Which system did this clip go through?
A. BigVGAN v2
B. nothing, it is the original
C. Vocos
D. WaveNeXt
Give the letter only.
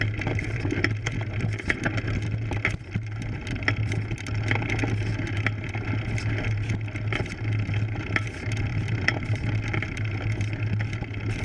B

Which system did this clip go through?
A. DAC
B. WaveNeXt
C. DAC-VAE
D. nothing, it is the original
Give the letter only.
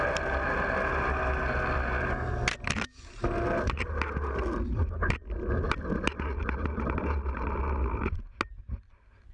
D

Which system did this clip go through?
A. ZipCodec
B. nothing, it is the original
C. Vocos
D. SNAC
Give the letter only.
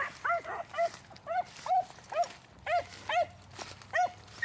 B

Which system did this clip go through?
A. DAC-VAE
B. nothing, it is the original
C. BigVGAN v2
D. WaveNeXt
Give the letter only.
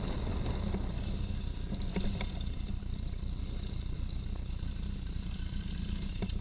B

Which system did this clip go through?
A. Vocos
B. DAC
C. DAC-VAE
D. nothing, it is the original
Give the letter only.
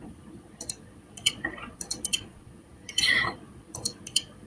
A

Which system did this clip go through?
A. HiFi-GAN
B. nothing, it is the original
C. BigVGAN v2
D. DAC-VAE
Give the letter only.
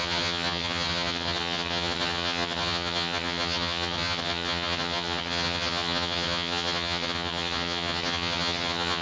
A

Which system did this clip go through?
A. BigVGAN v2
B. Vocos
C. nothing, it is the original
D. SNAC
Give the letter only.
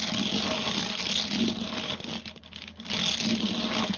C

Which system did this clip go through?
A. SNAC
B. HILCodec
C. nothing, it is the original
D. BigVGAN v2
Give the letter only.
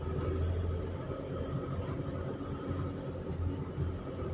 C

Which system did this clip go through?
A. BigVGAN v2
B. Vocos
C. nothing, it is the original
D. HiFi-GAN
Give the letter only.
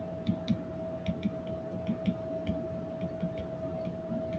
C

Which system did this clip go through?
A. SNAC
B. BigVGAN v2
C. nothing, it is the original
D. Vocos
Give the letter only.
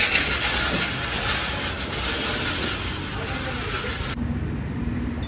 C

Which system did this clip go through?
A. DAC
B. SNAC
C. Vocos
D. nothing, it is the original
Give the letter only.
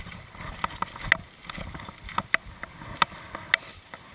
D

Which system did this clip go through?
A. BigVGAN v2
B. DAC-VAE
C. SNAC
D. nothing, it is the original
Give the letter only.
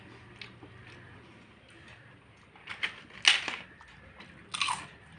D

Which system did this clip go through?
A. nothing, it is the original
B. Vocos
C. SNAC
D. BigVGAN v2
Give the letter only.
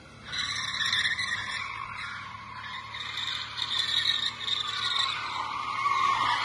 A